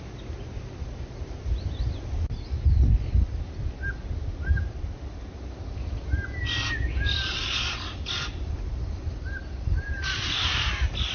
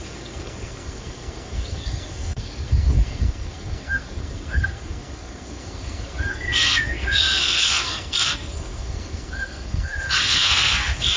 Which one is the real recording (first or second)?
first